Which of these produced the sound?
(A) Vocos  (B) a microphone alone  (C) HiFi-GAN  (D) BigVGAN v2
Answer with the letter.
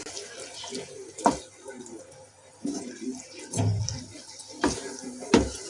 B